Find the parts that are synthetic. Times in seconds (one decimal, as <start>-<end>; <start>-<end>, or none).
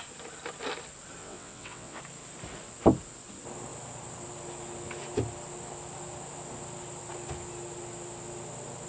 1.2-2.0